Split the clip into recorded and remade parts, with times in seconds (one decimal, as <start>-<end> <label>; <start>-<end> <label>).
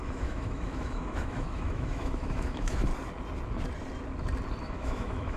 0.0-2.9 remade; 2.9-4.6 recorded; 4.6-5.4 remade